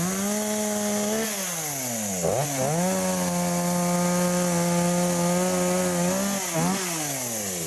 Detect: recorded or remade recorded